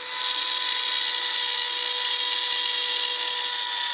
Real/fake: real